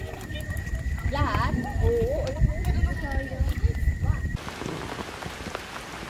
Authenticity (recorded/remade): recorded